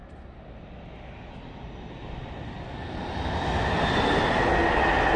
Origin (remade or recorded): recorded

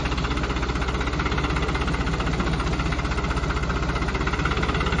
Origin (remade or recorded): recorded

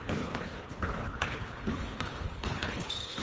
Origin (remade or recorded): remade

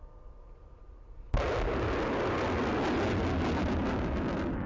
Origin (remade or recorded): recorded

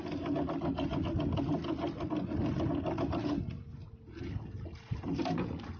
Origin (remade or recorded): recorded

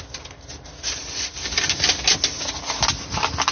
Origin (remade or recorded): recorded